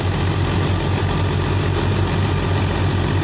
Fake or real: real